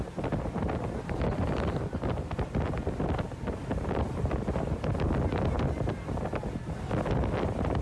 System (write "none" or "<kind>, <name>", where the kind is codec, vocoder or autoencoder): none